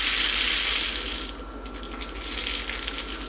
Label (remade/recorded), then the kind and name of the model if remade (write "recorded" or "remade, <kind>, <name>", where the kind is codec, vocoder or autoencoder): recorded